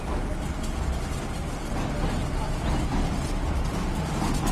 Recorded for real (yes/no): yes